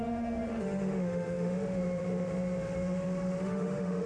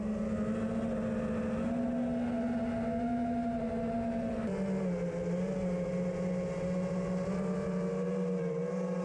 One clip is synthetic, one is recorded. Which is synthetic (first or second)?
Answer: first